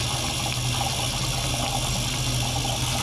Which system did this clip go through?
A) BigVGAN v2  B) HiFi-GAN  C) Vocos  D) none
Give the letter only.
D